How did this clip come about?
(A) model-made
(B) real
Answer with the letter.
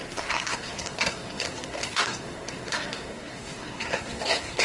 A